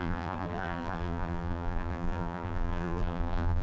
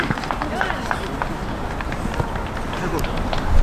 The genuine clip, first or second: second